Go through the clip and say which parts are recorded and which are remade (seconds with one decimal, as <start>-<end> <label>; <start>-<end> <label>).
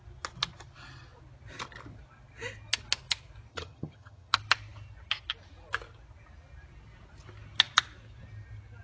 0.0-3.5 recorded; 3.5-4.3 remade; 4.3-8.8 recorded